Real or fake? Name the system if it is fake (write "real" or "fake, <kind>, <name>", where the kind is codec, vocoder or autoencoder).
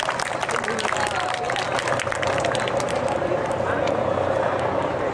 real